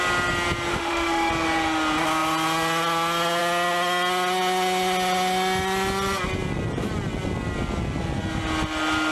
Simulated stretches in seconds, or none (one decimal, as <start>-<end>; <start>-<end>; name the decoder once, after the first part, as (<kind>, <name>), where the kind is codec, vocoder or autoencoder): 0.7-1.3 (autoencoder, DAC-VAE)